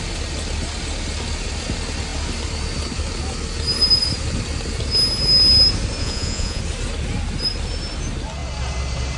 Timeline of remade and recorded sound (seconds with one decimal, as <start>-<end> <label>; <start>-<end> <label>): 0.0-6.0 recorded; 6.0-6.6 remade; 6.6-9.2 recorded